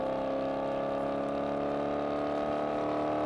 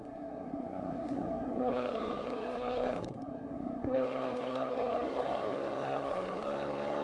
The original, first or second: first